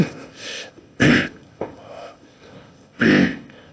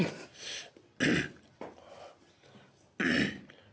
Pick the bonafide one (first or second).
second